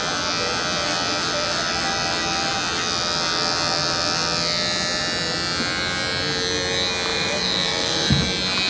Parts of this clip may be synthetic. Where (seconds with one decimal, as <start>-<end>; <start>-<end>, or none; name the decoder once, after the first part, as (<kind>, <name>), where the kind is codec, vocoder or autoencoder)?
7.1-8.1 (vocoder, BigVGAN v2)